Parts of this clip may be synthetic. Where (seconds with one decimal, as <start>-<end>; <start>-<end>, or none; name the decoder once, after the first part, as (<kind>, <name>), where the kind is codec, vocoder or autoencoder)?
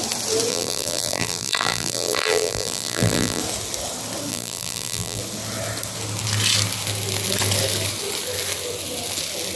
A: 0.5-3.4 (vocoder, BigVGAN v2); 4.3-5.2